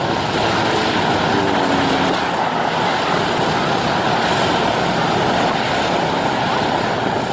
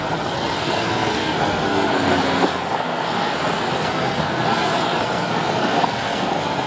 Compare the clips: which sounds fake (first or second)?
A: second